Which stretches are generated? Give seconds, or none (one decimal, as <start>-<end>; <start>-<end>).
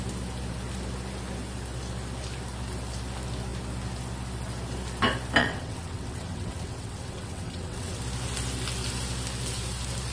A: 5.4-8.0